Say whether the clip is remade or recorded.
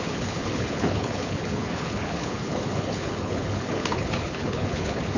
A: remade